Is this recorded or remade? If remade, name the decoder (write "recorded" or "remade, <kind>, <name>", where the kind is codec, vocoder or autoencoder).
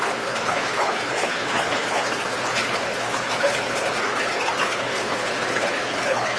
remade, codec, HILCodec